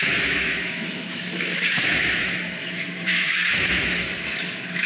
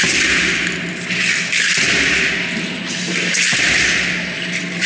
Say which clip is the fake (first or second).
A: first